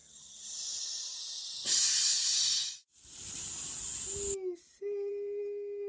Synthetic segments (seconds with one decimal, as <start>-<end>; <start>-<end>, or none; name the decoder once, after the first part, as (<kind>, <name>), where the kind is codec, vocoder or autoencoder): 0.0-0.7 (vocoder, BigVGAN v2)